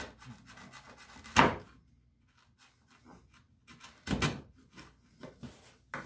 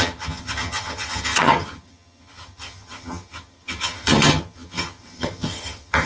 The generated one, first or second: second